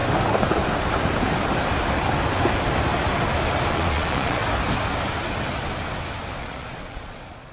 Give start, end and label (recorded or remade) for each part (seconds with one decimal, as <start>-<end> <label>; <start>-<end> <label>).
0.0-3.7 recorded; 3.7-4.4 remade; 4.4-6.4 recorded; 6.4-7.5 remade